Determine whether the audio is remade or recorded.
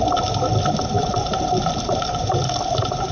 recorded